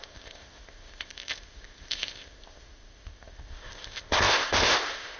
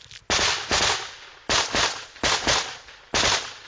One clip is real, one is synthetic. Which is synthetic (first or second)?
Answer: first